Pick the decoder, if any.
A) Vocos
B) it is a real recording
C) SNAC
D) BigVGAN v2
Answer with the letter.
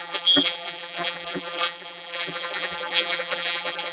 D